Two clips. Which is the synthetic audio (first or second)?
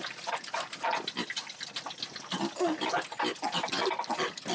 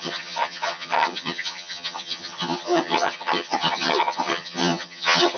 second